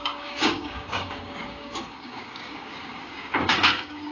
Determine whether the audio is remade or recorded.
remade